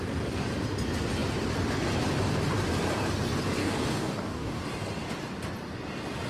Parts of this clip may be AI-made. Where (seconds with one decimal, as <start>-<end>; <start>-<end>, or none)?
3.6-4.6